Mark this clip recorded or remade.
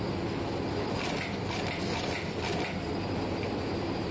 recorded